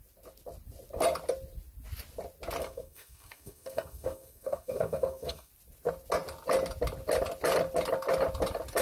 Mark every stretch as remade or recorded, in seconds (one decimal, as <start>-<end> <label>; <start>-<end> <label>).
0.0-2.6 recorded; 2.6-5.5 remade; 5.5-8.8 recorded